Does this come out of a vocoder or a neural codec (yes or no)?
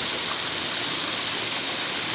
no